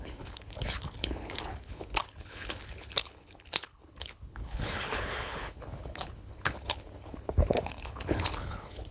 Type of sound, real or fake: fake